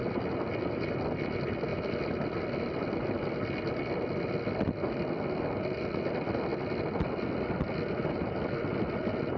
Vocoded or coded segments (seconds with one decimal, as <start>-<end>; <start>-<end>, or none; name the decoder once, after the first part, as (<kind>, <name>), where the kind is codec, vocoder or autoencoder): none